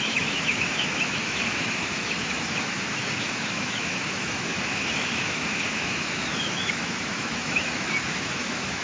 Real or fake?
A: fake